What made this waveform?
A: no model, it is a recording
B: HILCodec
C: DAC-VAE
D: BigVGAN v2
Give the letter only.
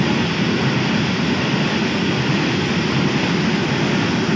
A